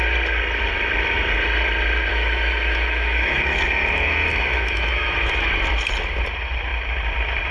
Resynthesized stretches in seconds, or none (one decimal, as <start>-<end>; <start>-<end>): 2.1-3.6; 4.3-5.5